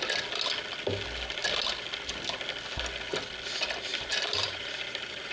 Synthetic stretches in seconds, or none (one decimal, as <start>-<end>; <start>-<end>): 3.9-5.3